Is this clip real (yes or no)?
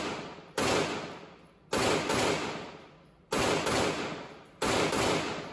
yes